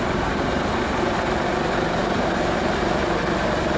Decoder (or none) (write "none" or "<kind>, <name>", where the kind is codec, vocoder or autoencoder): vocoder, BigVGAN v2